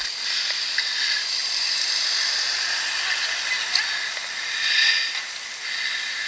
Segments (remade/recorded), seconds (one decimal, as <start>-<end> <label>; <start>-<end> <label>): 0.0-6.3 recorded